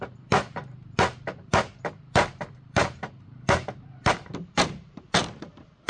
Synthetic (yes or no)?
yes